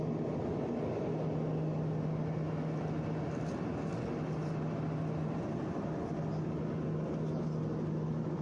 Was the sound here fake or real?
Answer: real